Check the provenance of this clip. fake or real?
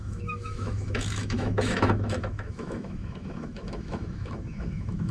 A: fake